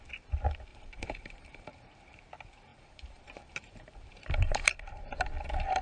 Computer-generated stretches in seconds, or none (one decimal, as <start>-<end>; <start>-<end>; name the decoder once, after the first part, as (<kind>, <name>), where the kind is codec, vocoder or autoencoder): 0.7-1.9 (vocoder, BigVGAN v2); 2.7-5.0

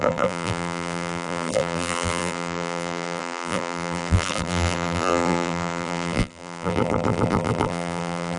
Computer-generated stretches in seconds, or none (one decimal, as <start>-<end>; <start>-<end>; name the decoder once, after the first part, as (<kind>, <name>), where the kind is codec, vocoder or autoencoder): 0.0-8.4 (vocoder, BigVGAN v2)